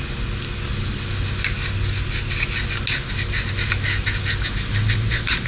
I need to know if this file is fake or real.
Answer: real